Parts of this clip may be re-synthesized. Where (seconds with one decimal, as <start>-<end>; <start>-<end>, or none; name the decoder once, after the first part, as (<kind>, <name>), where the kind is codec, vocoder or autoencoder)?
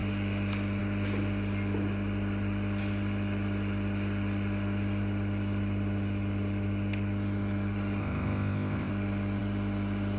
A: 8.0-8.9 (codec, ZipCodec)